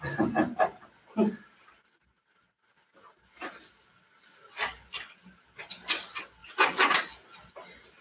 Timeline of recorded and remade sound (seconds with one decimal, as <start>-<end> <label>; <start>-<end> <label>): 0.0-8.0 recorded